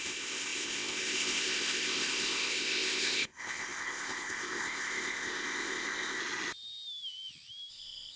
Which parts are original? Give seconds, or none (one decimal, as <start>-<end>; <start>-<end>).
6.2-7.7

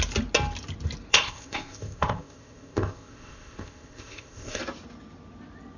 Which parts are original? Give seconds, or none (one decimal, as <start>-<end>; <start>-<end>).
0.0-1.1; 4.6-5.8

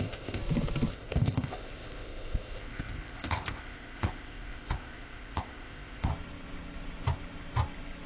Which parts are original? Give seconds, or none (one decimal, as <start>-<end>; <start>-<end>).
0.4-0.9; 6.1-8.1

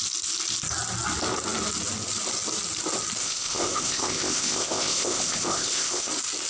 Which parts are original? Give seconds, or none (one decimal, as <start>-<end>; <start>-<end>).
0.0-3.2; 6.1-6.5

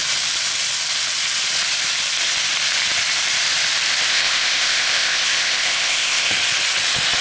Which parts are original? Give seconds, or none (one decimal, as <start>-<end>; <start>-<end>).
0.0-4.1; 6.3-7.2

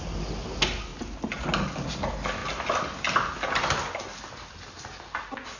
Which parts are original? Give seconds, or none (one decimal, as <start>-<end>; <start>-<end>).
0.0-5.6